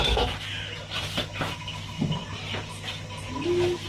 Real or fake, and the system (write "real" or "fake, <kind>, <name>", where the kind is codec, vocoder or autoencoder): real